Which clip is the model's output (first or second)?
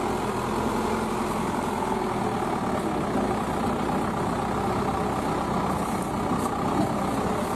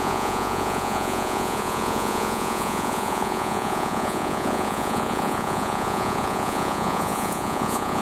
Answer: second